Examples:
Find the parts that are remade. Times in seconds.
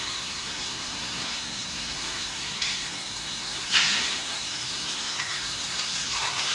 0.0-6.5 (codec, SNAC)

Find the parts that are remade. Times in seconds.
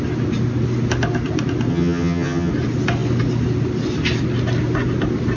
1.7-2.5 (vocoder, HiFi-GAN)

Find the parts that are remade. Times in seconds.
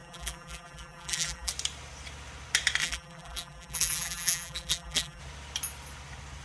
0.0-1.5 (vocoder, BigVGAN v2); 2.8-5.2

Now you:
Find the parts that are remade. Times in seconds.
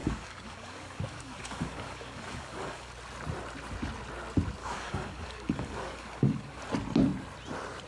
0.0-2.9 (codec, DAC); 4.6-6.6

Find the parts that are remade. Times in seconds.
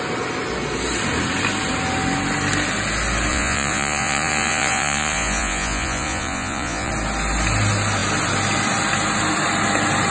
3.3-6.9 (vocoder, Vocos)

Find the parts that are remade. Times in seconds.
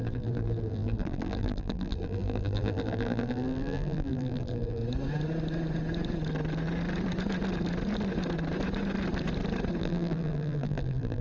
0.0-4.8 (vocoder, BigVGAN v2); 9.8-11.2